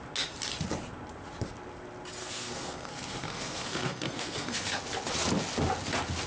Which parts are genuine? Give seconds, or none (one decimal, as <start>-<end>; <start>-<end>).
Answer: 0.0-2.2; 4.8-6.3